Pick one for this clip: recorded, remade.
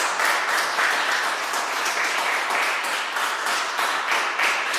recorded